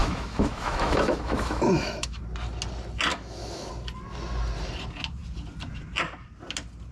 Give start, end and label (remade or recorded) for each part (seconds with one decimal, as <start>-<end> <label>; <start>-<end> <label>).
0.0-2.2 remade; 2.2-3.1 recorded; 3.1-3.7 remade; 3.7-6.9 recorded